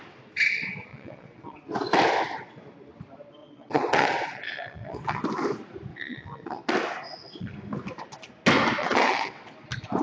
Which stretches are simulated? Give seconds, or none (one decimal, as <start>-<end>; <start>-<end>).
0.9-1.6; 3.4-5.2; 5.9-6.6; 8.8-9.5